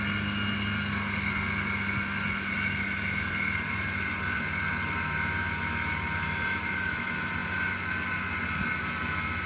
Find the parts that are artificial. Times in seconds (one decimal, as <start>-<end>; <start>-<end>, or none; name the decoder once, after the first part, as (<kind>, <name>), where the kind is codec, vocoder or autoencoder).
none